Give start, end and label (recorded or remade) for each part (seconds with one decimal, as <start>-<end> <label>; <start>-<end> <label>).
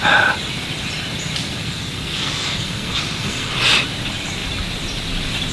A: 0.0-1.6 recorded; 1.6-3.5 remade; 3.5-5.5 recorded